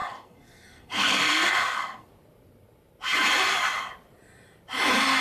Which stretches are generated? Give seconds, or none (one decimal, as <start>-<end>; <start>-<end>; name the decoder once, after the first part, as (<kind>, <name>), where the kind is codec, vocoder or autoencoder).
0.0-2.1 (codec, SNAC)